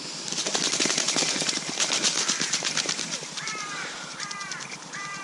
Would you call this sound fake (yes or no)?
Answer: yes